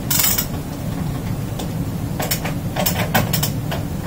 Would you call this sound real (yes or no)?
yes